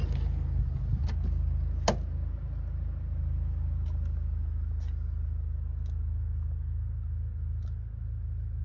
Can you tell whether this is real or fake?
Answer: real